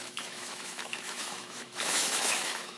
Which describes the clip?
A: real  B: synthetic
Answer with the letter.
B